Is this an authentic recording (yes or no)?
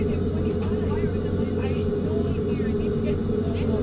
yes